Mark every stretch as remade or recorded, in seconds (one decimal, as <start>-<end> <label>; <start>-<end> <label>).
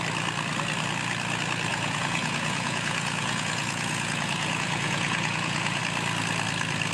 0.0-1.7 recorded; 1.7-5.8 remade; 5.8-6.9 recorded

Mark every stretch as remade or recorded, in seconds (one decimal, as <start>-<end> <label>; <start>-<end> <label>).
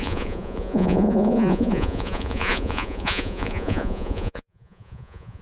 0.0-5.4 remade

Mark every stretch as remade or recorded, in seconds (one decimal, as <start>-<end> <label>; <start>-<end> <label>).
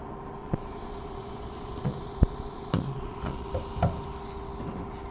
0.0-0.4 recorded; 0.4-3.5 remade; 3.5-5.1 recorded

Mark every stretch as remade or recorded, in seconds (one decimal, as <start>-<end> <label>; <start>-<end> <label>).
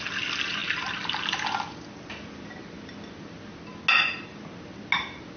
0.0-5.4 recorded